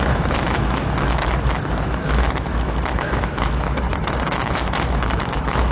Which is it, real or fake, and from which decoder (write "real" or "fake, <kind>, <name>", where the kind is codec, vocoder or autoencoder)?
fake, autoencoder, DAC-VAE